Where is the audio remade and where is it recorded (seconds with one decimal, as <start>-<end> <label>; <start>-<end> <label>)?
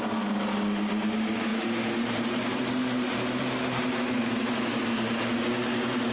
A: 0.0-1.5 recorded; 1.5-3.8 remade; 3.8-6.1 recorded